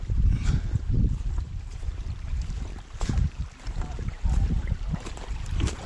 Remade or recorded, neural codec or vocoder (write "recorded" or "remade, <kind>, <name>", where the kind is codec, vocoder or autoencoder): remade, vocoder, BigVGAN v2